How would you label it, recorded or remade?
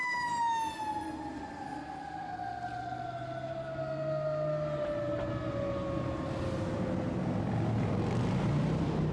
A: recorded